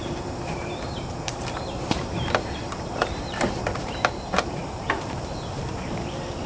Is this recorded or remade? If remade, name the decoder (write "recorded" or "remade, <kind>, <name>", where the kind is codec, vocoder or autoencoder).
remade, vocoder, BigVGAN v2